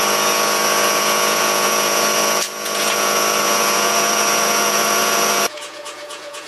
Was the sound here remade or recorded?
remade